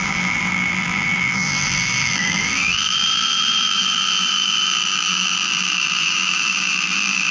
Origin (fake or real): fake